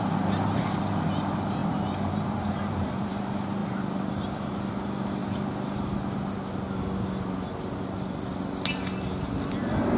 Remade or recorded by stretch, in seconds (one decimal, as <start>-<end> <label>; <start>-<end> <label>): 0.0-1.6 recorded; 1.6-3.1 remade; 3.1-3.6 recorded; 3.6-4.7 remade; 4.7-10.0 recorded